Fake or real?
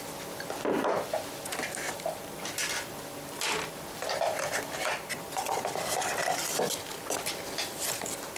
real